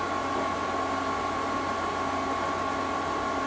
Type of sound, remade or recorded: recorded